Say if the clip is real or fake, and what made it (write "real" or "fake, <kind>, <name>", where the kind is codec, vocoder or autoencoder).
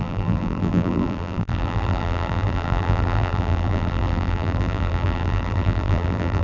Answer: fake, vocoder, BigVGAN v2